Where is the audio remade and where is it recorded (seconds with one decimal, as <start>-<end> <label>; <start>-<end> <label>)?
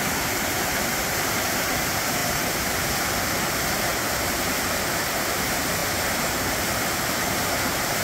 0.0-8.0 remade